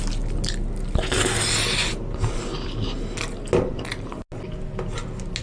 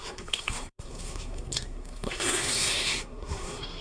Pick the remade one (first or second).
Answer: second